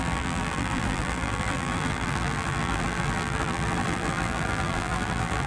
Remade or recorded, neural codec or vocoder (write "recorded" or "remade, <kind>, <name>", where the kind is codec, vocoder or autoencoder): remade, vocoder, BigVGAN v2